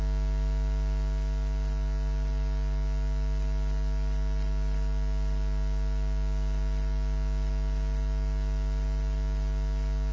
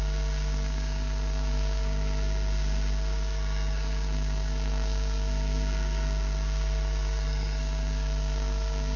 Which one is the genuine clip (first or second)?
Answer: first